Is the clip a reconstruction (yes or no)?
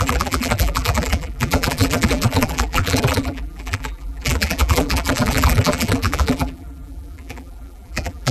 yes